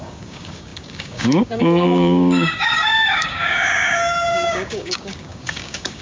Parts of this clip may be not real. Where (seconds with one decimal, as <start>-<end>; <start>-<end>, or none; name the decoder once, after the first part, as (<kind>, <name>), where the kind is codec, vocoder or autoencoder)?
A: 0.0-6.0 (codec, DAC)